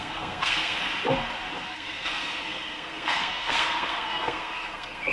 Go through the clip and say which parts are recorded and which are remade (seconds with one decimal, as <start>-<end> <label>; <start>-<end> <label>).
0.0-0.8 remade; 0.8-1.6 recorded; 1.6-5.1 remade